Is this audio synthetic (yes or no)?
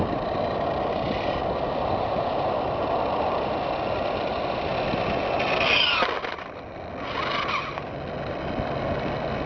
no